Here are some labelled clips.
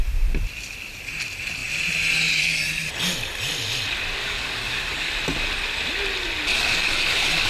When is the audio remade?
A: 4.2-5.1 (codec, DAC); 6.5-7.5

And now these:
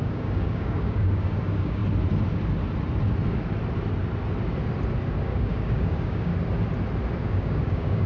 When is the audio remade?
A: 0.0-1.8 (codec, DAC); 5.2-6.3; 7.2-8.1

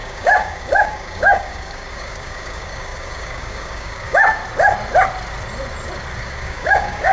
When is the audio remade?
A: 0.0-4.4 (codec, DAC); 6.2-7.1

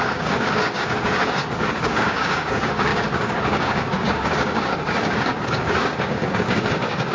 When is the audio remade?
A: 0.0-7.1 (codec, DAC)

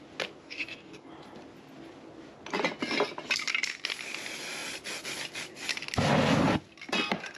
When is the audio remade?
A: 0.4-1.1 (codec, DAC)